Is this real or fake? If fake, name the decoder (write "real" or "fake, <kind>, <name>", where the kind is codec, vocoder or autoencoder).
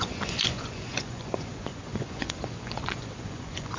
fake, vocoder, Vocos